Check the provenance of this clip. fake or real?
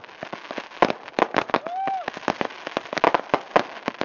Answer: real